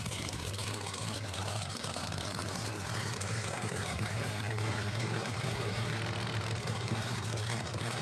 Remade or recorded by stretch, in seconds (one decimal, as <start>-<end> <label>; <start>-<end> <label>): 0.0-6.0 remade; 6.0-6.6 recorded; 6.6-8.0 remade